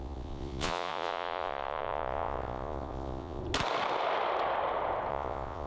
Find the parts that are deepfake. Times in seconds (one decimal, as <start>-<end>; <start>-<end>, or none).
0.0-3.4; 5.1-5.7